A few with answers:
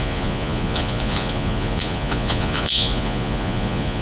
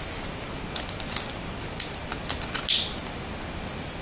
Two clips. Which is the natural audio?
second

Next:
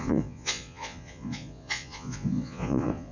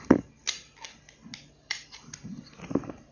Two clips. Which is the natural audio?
second